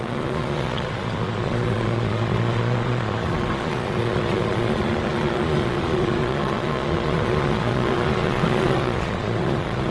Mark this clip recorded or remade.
remade